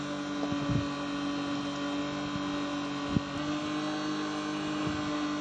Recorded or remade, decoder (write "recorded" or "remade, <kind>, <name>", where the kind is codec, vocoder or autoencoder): recorded